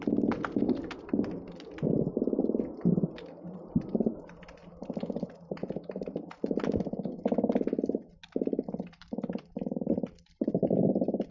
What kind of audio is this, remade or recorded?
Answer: recorded